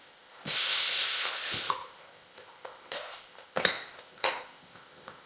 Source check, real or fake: fake